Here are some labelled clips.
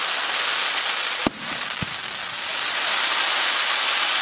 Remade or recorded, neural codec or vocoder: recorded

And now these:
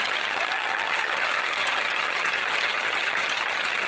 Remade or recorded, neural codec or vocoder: remade, vocoder, HiFi-GAN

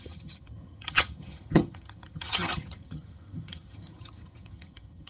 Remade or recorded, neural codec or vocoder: remade, vocoder, HiFi-GAN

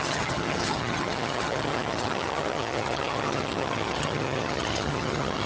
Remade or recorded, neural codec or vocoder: remade, vocoder, HiFi-GAN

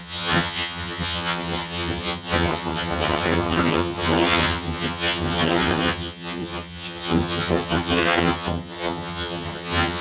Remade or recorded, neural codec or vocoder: remade, vocoder, HiFi-GAN